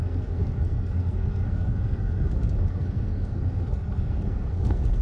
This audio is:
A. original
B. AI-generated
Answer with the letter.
B